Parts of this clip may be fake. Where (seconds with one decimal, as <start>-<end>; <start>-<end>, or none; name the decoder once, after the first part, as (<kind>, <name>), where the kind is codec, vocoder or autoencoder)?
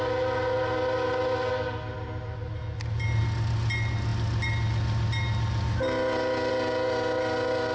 none